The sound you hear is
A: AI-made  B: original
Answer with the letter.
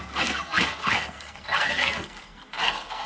A